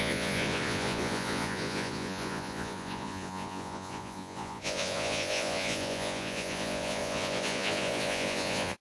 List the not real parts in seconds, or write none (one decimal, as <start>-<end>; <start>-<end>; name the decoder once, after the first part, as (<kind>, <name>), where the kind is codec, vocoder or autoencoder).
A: 0.0-8.8 (vocoder, Vocos)